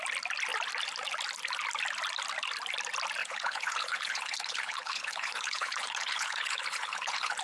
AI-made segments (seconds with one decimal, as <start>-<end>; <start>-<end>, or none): 3.2-7.4